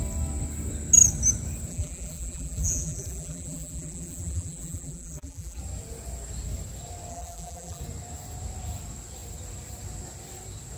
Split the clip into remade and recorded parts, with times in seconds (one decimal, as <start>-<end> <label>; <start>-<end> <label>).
0.0-1.7 recorded; 1.7-5.6 remade; 5.6-7.1 recorded; 7.1-7.8 remade; 7.8-10.8 recorded